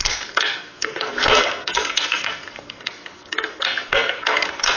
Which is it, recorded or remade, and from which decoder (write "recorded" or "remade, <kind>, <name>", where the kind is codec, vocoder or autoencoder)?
remade, codec, SNAC